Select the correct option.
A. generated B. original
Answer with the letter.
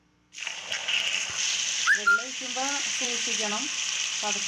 A